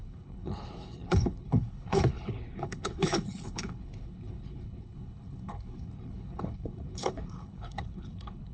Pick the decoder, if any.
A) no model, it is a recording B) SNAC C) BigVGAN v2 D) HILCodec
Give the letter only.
D